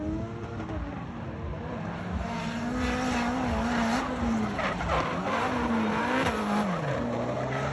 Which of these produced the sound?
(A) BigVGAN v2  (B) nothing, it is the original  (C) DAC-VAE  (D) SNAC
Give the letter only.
B